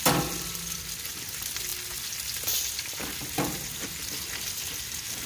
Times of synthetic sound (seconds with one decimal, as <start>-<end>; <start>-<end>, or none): none